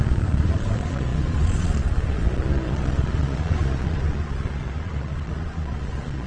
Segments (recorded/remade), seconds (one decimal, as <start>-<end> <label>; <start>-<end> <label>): 0.0-6.3 remade